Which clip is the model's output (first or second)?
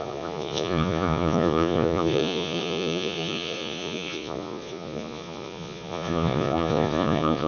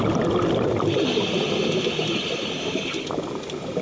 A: first